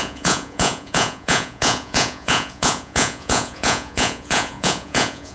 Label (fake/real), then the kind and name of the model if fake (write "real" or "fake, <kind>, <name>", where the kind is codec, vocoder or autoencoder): fake, vocoder, Vocos